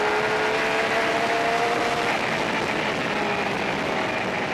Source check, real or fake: real